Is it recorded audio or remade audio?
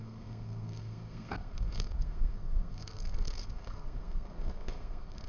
remade